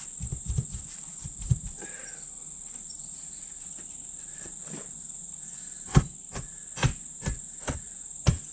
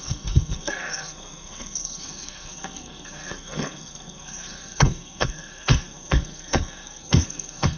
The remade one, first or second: second